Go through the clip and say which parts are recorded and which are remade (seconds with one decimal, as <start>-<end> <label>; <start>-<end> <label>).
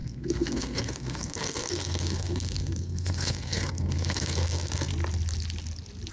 0.0-4.9 remade; 4.9-6.1 recorded